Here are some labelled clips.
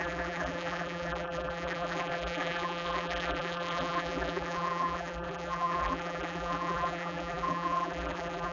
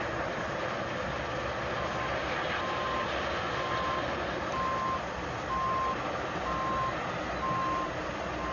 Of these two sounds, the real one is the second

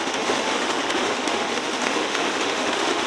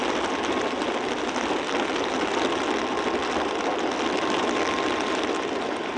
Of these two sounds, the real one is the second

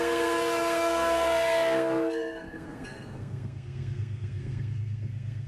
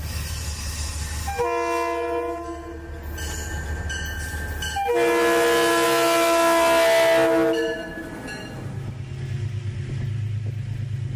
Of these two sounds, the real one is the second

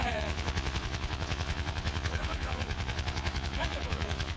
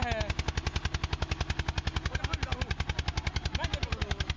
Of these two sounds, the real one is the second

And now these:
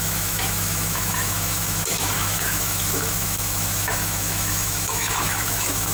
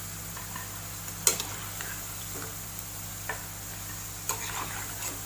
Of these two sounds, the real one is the second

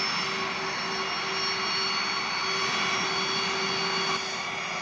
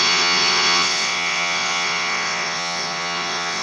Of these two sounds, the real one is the first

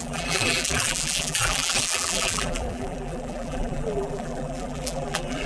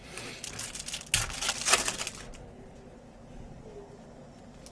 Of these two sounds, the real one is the second